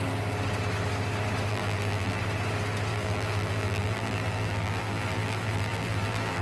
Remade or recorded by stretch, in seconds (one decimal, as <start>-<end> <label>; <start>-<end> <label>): 0.0-1.5 recorded; 1.5-2.2 remade; 2.2-2.9 recorded; 2.9-6.4 remade